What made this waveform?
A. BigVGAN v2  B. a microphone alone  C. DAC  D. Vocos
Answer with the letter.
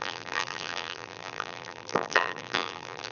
A